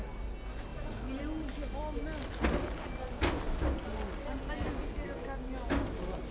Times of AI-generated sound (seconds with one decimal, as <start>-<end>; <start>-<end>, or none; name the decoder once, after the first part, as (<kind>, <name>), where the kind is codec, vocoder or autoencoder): none